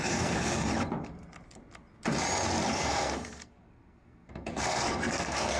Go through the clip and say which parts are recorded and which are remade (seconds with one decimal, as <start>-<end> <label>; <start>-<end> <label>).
0.0-0.7 remade; 0.7-2.7 recorded; 2.7-5.6 remade